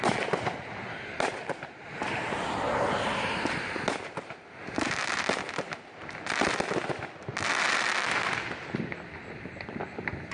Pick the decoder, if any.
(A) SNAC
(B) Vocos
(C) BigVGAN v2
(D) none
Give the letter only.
D